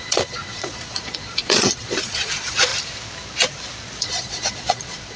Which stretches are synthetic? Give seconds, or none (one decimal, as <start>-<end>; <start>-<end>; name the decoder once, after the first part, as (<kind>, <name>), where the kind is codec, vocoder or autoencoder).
0.0-2.7 (vocoder, Vocos); 4.0-5.2